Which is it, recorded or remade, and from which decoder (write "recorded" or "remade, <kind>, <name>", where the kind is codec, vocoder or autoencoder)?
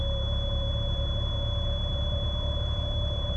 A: recorded